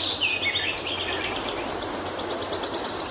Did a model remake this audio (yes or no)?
no